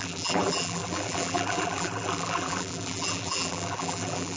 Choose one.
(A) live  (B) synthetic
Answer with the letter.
B